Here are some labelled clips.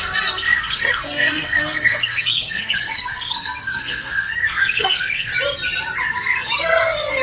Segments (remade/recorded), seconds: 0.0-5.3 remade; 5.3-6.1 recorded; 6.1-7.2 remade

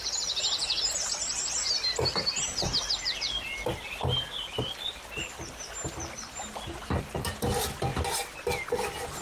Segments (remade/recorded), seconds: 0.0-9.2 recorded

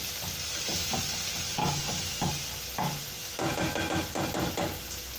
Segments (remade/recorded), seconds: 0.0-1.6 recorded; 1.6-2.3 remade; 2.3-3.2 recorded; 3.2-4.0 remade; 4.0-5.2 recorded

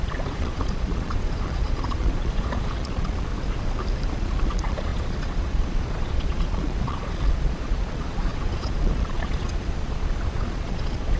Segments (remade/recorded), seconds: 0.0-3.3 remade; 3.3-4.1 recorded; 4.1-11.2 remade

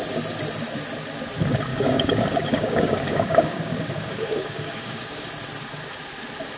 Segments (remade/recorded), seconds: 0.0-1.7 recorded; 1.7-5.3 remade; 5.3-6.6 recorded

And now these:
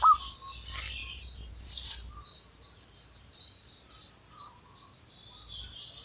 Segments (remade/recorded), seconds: 0.0-1.0 recorded; 1.0-3.9 remade; 3.9-6.0 recorded